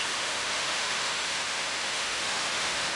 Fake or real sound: fake